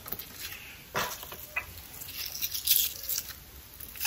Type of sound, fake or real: real